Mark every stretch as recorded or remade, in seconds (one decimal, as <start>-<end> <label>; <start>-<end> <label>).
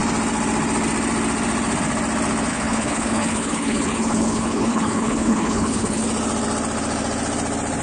0.0-2.5 recorded; 2.5-6.0 remade; 6.0-7.8 recorded